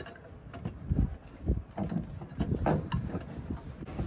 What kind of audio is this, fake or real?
real